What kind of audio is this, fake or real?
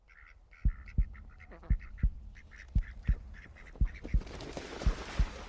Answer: real